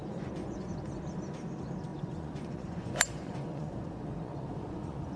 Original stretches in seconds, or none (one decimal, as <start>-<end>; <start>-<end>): 1.0-1.9